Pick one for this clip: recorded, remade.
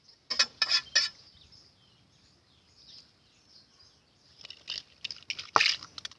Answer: recorded